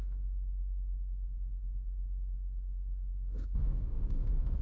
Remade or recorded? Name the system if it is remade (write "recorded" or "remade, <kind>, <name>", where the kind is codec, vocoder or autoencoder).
remade, autoencoder, DAC-VAE